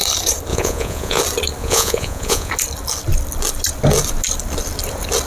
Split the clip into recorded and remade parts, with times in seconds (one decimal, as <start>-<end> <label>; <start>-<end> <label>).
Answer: 0.0-0.5 recorded; 0.5-1.2 remade; 1.2-1.6 recorded; 1.6-2.5 remade; 2.5-5.3 recorded